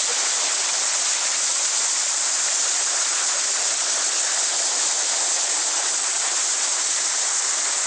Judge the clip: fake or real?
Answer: real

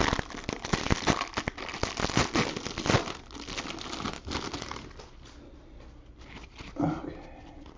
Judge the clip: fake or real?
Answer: real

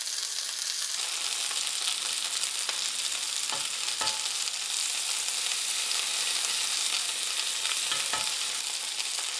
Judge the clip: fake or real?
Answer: real